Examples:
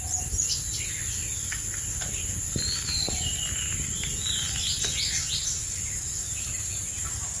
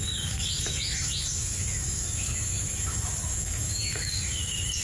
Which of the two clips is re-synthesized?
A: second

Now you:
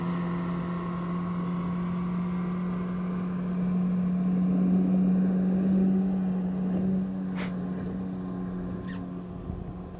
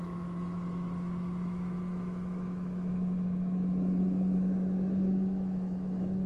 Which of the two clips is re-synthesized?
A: second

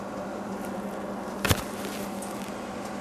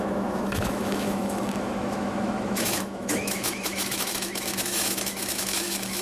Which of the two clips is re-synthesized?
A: second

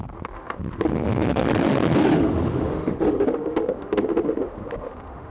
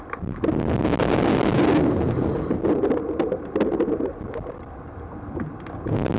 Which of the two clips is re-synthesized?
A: first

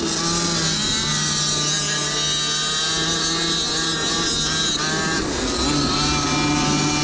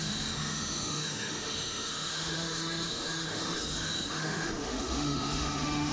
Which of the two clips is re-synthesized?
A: second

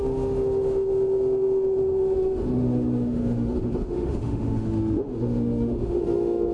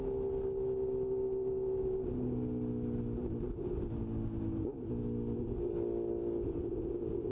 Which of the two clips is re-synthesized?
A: first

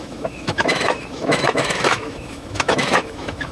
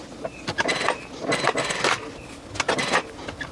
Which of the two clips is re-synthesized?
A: first